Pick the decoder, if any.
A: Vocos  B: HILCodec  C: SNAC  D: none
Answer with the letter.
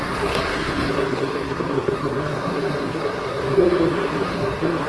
C